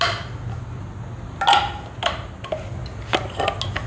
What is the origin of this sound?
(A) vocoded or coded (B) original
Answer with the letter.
B